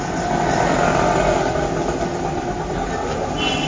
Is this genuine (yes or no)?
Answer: yes